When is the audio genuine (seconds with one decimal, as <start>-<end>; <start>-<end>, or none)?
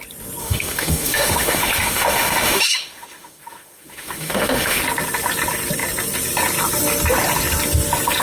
0.0-0.4; 4.8-8.2